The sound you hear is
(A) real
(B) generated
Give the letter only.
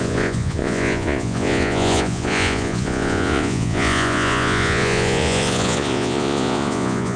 B